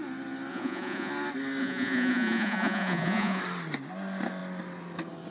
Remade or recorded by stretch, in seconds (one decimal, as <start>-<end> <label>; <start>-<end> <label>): 0.0-0.5 recorded; 0.5-1.1 remade; 1.1-1.6 recorded; 1.6-3.4 remade; 3.4-5.3 recorded